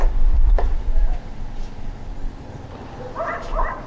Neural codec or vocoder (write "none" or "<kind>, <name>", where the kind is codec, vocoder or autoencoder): none